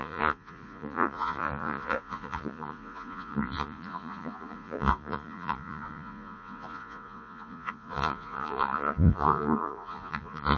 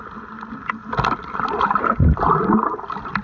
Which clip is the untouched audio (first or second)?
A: second